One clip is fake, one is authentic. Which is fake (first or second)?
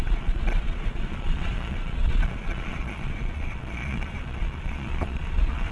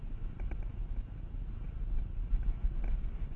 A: first